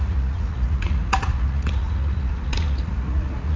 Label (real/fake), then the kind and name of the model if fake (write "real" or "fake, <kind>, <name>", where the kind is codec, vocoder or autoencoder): fake, vocoder, Vocos